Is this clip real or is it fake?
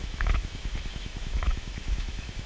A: fake